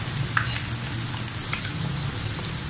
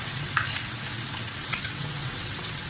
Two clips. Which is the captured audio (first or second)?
first